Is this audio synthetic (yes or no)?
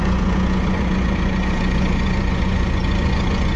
yes